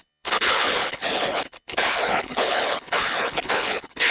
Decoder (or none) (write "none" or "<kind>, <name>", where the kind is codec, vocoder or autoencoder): codec, HILCodec